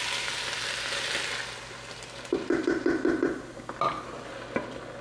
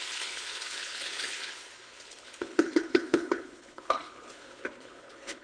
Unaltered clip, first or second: first